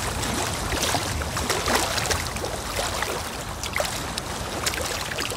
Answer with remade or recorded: recorded